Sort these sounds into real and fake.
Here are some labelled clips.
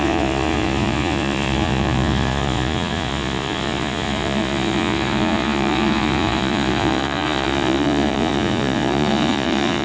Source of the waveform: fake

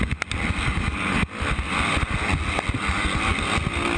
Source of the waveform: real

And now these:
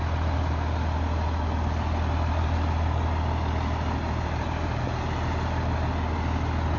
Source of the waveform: real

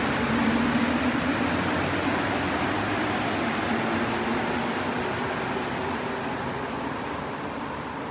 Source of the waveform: real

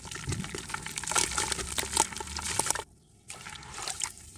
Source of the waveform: real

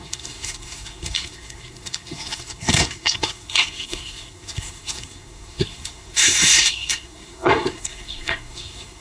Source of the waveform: fake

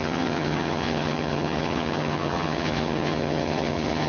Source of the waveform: fake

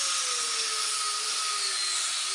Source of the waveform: real